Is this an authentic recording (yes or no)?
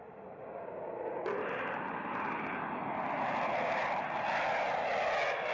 yes